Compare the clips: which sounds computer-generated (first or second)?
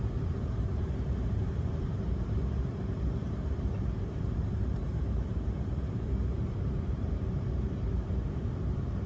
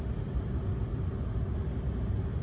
first